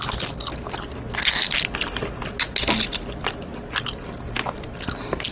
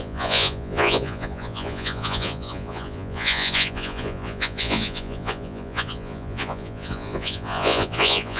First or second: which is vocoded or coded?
second